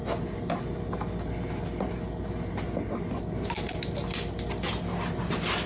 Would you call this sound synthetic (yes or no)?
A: no